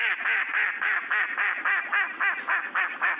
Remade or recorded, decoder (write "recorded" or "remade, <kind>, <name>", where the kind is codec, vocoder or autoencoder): recorded